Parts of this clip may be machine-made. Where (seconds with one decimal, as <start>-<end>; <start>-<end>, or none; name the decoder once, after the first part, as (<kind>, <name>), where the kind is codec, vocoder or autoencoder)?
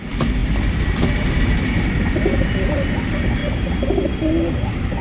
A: 0.0-0.4 (vocoder, BigVGAN v2); 1.3-3.4; 4.5-5.0